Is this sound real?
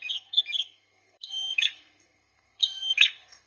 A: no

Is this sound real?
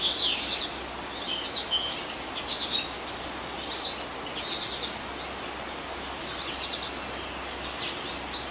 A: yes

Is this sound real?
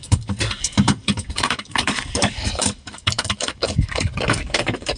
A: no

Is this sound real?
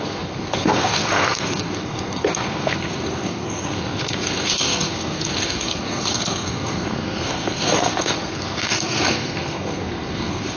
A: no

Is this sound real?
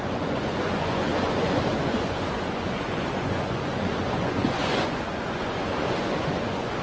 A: no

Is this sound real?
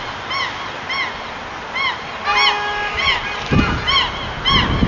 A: yes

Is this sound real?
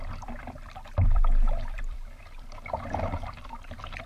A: no